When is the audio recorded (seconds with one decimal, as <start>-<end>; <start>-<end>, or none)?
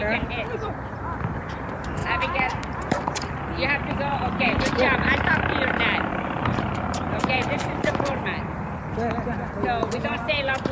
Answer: 0.0-2.0; 3.4-4.1; 4.8-6.1; 8.1-9.8